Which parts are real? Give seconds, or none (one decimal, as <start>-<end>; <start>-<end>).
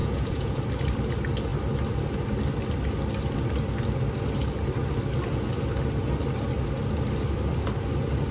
0.6-8.3